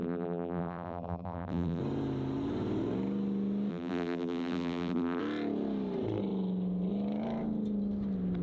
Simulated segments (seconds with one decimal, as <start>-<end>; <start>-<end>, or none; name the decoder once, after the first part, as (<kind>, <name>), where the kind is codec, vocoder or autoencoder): 0.0-1.8 (vocoder, BigVGAN v2); 3.7-5.2